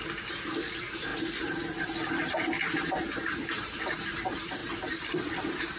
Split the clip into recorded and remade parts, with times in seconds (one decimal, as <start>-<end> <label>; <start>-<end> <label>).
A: 0.0-5.8 recorded